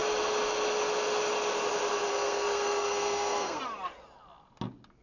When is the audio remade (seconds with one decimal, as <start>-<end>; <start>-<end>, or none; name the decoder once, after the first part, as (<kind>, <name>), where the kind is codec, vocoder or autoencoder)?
2.1-3.6 (codec, SNAC)